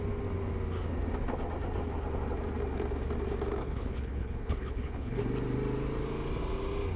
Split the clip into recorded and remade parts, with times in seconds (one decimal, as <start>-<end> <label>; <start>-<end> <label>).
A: 0.0-3.6 recorded; 3.6-5.2 remade; 5.2-7.0 recorded